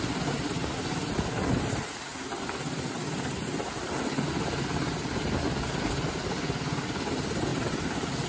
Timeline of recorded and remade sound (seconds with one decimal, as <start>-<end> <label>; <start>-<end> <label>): 0.0-7.5 recorded; 7.5-8.3 remade